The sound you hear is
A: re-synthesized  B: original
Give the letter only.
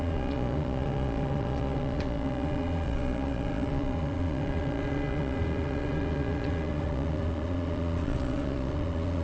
A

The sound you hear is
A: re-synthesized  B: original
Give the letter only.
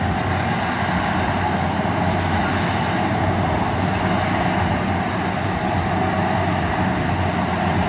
B